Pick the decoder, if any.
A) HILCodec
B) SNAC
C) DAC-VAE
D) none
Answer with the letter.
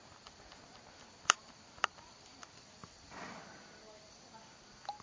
D